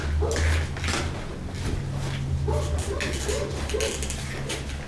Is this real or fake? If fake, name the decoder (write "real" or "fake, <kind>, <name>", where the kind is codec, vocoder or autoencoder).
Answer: real